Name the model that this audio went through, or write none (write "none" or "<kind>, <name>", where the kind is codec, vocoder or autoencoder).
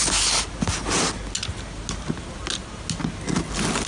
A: none